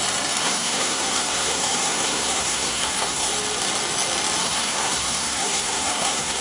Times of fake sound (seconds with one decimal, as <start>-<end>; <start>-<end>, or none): 0.4-3.3; 4.4-6.4